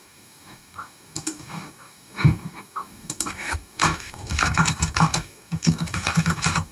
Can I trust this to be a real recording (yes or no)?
no